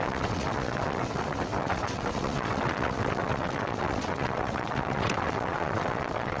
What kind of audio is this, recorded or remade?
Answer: remade